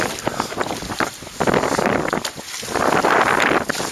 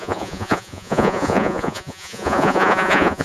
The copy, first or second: second